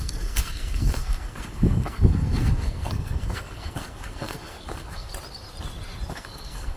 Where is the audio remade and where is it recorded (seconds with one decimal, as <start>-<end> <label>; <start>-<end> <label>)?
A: 0.0-5.1 remade; 5.1-6.1 recorded; 6.1-6.8 remade